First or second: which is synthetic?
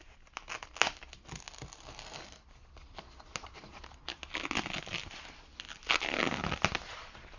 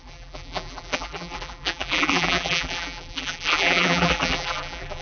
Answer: second